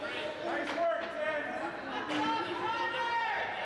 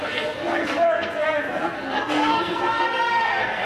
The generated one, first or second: second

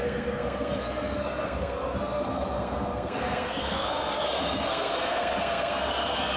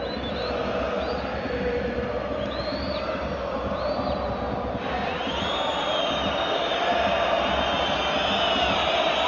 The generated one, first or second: first